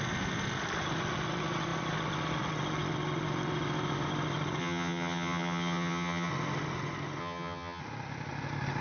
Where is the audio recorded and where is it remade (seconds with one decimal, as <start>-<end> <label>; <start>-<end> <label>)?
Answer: 0.0-4.6 recorded; 4.6-6.3 remade; 6.3-7.2 recorded; 7.2-7.8 remade; 7.8-8.8 recorded